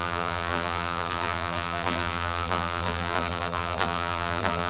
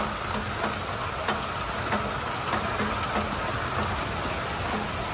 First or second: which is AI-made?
first